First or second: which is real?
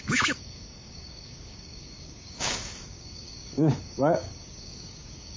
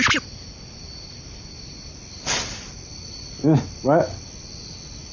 second